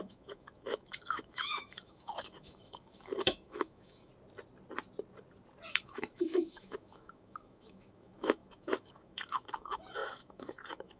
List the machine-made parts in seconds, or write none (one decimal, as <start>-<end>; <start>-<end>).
0.0-4.1; 5.7-11.0